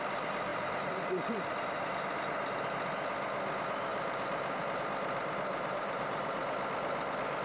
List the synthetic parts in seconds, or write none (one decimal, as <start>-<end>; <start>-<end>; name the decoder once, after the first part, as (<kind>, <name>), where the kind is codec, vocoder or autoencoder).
0.5-2.7 (vocoder, BigVGAN v2); 3.9-4.8; 5.5-6.2